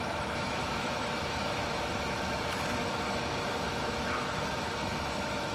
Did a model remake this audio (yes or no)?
yes